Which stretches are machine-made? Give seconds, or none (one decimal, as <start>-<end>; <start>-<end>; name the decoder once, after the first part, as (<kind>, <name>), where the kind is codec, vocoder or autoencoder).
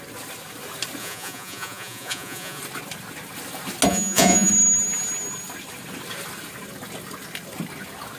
1.0-2.6 (vocoder, Vocos); 3.9-4.5